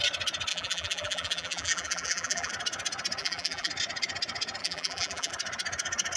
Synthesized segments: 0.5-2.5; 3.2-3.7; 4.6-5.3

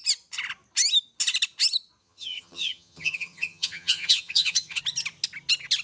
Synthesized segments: 2.0-4.8

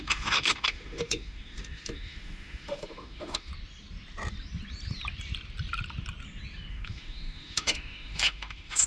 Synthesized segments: 0.0-3.5; 6.7-8.9

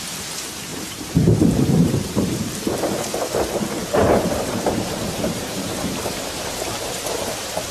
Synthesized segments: 0.7-2.5; 3.8-7.7

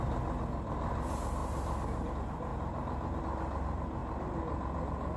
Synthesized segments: none

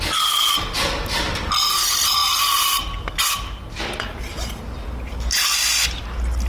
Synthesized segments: none

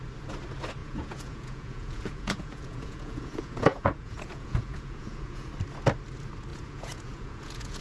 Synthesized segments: 0.8-5.5; 6.5-7.8

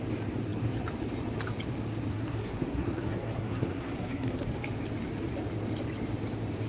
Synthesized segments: 2.1-4.5